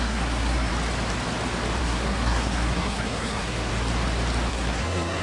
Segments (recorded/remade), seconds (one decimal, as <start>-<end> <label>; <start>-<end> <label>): 0.0-0.7 remade; 0.7-1.8 recorded; 1.8-3.7 remade; 3.7-4.5 recorded; 4.5-5.2 remade